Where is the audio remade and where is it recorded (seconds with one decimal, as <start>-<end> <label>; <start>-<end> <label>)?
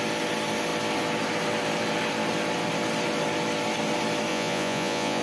0.0-4.3 recorded; 4.3-5.2 remade